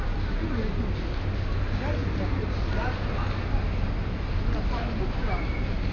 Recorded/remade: recorded